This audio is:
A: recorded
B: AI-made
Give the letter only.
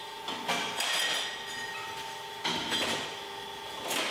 A